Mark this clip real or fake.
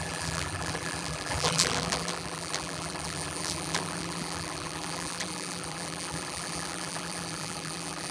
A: fake